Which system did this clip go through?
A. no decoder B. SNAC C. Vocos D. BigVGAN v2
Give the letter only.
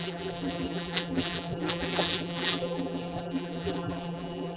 D